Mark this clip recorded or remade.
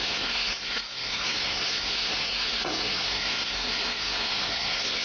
remade